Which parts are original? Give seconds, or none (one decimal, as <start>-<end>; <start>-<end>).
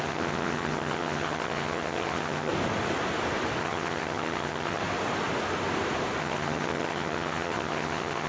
2.5-3.6; 4.8-6.2